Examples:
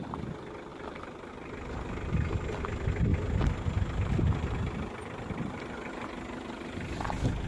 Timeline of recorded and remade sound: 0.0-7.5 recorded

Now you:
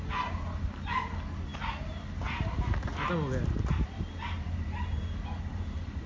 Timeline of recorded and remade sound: 0.0-6.1 recorded

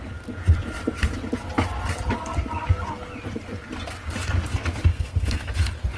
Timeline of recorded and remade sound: 0.0-4.9 recorded; 4.9-5.5 remade; 5.5-6.0 recorded

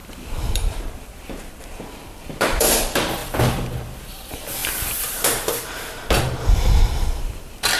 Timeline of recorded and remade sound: 0.0-7.8 remade

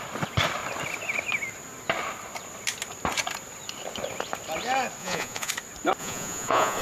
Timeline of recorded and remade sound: 0.0-5.0 recorded; 5.0-5.5 remade; 5.5-6.0 recorded; 6.0-6.8 remade